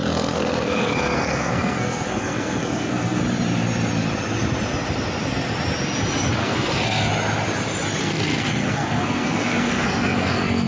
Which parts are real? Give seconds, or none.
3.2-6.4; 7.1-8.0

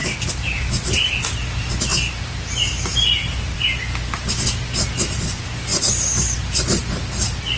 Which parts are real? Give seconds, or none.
0.0-7.6